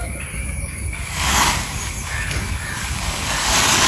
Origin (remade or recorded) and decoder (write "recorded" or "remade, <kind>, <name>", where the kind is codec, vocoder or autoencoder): remade, codec, DAC